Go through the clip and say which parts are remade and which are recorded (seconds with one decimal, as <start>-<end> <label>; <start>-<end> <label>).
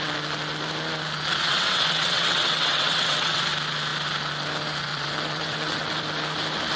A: 0.0-1.4 recorded; 1.4-3.4 remade; 3.4-4.9 recorded; 4.9-5.9 remade; 5.9-6.8 recorded